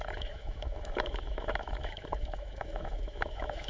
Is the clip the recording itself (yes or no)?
no